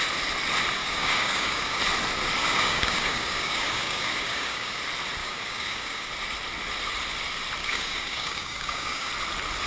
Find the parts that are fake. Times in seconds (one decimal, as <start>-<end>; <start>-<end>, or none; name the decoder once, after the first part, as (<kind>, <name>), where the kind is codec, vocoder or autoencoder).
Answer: 0.8-1.8 (codec, DAC); 2.4-4.8; 5.2-6.1; 7.6-9.1